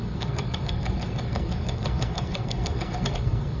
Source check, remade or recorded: remade